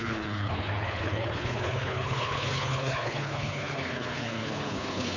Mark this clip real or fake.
fake